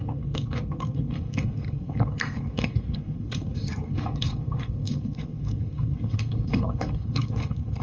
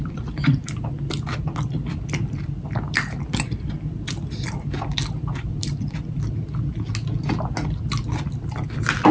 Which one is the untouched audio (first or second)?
second